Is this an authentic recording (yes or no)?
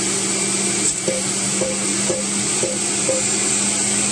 yes